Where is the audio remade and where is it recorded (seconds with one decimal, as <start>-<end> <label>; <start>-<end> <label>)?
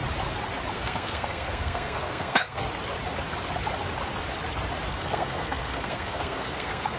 0.0-0.7 recorded; 0.7-2.6 remade; 2.6-4.9 recorded; 4.9-7.0 remade